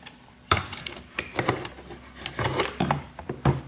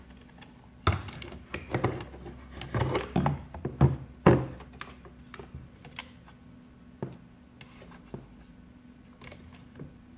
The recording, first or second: second